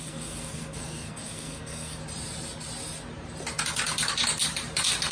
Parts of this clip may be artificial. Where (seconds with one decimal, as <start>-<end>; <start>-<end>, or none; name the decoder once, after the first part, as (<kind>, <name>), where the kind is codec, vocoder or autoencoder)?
0.0-2.0 (codec, SNAC)